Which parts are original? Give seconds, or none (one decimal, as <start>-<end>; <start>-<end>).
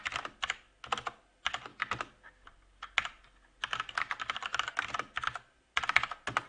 0.0-6.5